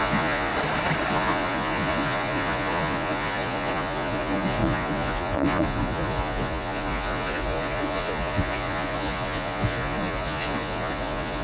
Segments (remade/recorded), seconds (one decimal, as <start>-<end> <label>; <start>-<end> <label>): 0.0-0.5 remade; 0.5-1.1 recorded; 1.1-11.4 remade